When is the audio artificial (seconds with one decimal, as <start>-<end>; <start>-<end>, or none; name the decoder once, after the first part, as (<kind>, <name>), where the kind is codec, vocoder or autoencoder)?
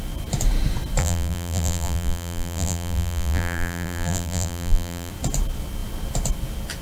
1.0-5.1 (vocoder, BigVGAN v2)